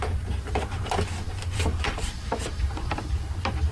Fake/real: fake